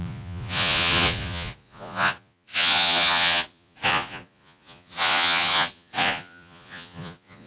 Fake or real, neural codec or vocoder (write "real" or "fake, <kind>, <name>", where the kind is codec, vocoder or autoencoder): fake, vocoder, Vocos